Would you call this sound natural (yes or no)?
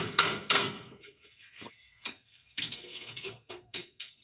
no